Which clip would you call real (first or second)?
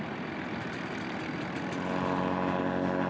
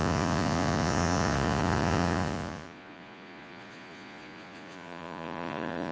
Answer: first